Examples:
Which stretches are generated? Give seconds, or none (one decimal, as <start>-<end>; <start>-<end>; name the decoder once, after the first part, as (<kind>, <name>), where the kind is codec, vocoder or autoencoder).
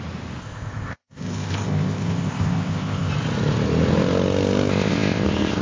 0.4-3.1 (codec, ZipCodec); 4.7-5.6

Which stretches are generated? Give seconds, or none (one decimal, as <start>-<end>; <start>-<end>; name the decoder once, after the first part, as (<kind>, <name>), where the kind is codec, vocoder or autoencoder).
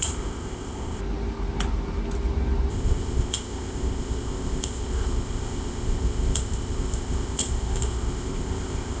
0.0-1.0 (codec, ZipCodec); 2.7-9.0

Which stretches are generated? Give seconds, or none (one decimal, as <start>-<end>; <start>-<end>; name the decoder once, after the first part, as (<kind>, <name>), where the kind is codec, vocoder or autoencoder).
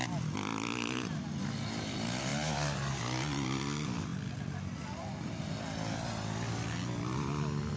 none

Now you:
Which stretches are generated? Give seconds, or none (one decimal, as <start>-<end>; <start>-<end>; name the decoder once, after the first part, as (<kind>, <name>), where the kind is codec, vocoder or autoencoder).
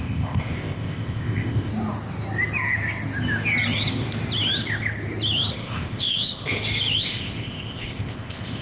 0.0-1.7 (codec, ZipCodec); 5.5-6.4; 7.0-8.6